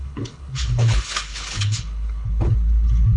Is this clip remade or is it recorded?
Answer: remade